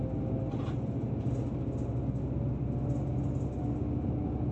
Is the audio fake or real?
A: real